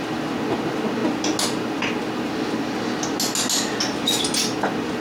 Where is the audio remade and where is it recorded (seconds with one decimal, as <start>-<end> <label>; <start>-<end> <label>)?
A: 0.0-5.0 recorded

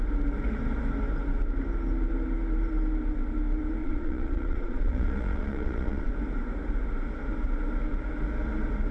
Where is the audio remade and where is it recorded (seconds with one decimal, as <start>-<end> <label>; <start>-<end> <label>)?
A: 0.0-3.8 recorded; 3.8-6.1 remade; 6.1-8.9 recorded

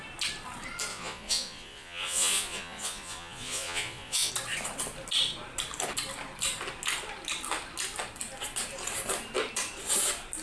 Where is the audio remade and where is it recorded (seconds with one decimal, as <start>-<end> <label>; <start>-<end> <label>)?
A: 0.0-0.9 recorded; 0.9-4.3 remade; 4.3-10.4 recorded

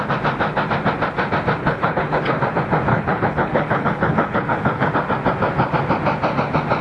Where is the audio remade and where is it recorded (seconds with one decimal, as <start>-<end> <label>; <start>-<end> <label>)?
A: 0.0-1.6 recorded; 1.6-2.4 remade; 2.4-2.9 recorded; 2.9-4.9 remade; 4.9-6.8 recorded

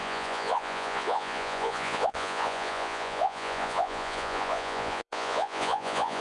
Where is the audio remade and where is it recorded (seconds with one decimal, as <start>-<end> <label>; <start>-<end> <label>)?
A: 0.0-6.2 remade

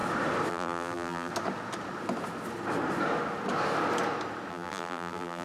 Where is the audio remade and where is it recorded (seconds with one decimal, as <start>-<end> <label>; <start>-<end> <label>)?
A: 0.0-0.5 recorded; 0.5-1.3 remade; 1.3-4.5 recorded; 4.5-5.4 remade